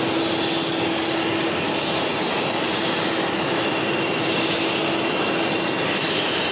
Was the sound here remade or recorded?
recorded